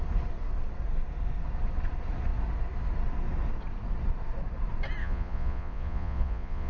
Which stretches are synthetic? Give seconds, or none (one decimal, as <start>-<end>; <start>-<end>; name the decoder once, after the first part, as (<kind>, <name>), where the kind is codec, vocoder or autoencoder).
5.0-6.7 (vocoder, Vocos)